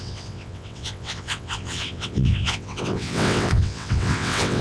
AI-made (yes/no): yes